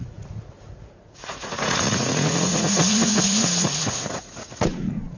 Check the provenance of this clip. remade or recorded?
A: remade